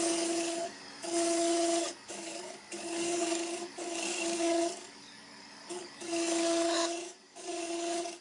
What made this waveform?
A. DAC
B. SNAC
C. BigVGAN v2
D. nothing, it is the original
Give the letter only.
A